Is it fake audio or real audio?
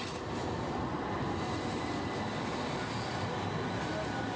real